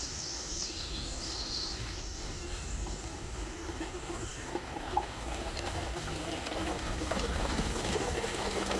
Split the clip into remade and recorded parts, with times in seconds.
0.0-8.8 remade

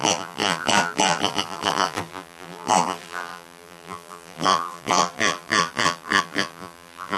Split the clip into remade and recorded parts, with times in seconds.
0.0-7.2 remade

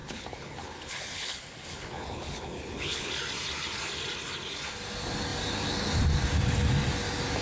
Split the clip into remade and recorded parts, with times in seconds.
0.0-3.1 remade; 3.1-7.4 recorded